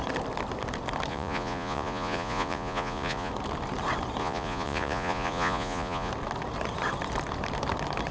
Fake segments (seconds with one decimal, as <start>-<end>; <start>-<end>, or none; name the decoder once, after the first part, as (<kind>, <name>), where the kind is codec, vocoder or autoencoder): 1.1-3.3 (vocoder, Vocos); 4.2-6.1